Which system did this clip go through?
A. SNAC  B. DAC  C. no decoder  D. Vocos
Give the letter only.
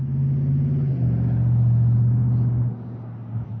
C